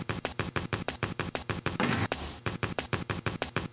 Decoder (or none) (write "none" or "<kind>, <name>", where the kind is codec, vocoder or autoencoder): vocoder, BigVGAN v2